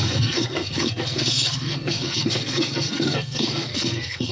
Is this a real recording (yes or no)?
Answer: no